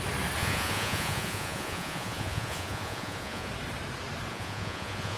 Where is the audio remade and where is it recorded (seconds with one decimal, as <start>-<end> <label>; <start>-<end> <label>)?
0.0-0.4 recorded; 0.4-3.5 remade; 3.5-4.3 recorded; 4.3-5.2 remade